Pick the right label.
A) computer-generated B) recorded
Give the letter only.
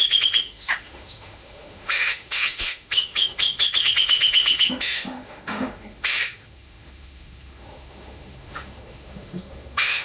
A